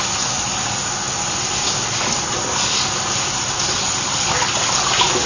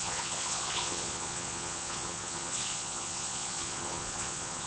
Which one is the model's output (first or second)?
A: second